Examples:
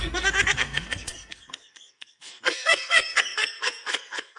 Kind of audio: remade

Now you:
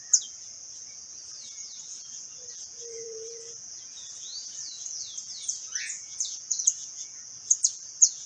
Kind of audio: remade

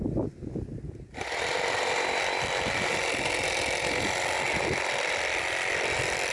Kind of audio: recorded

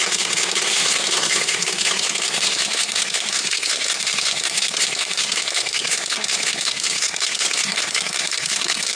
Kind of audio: remade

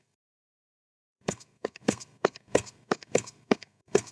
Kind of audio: remade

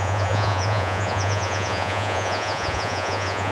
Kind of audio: remade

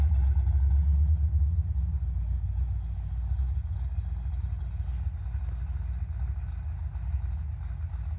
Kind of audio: recorded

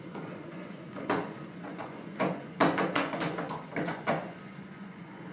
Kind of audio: remade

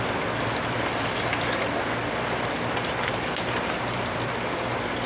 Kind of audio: recorded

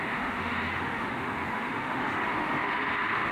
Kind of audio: remade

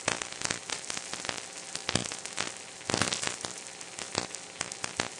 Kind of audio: recorded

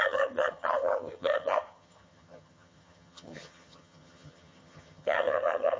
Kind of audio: remade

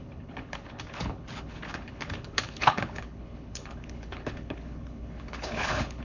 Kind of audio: remade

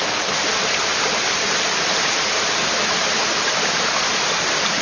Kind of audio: recorded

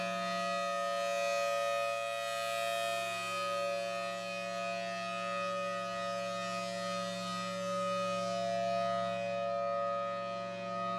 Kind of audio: recorded